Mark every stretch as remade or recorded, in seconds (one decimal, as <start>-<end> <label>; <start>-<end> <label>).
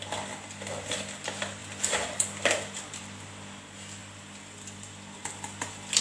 0.0-1.6 recorded; 1.6-3.0 remade; 3.0-4.0 recorded; 4.0-5.3 remade; 5.3-6.0 recorded